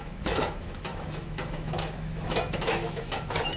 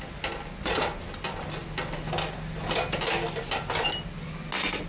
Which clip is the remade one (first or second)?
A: first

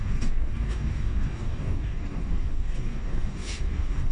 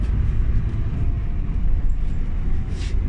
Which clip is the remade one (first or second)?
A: first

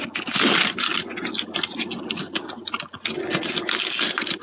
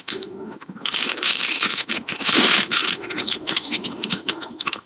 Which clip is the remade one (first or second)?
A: second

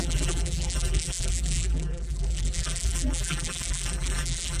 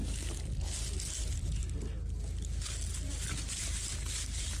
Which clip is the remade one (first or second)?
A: first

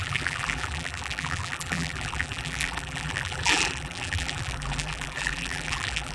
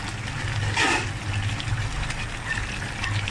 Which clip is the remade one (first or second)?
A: first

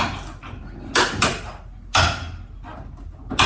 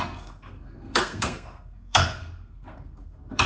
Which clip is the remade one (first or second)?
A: second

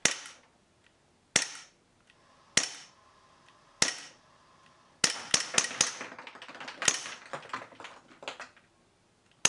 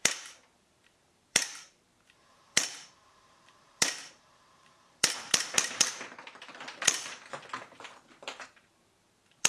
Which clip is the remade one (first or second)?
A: second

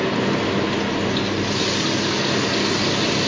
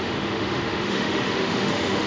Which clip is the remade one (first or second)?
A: second